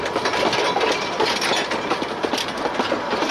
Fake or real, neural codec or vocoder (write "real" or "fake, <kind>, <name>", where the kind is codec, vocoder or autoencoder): real